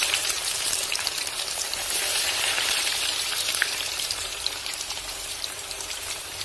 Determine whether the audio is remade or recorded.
remade